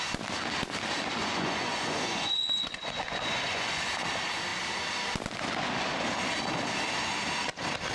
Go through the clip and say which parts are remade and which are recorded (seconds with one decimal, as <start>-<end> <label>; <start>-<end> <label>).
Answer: 0.0-1.2 recorded; 1.2-3.9 remade; 3.9-7.9 recorded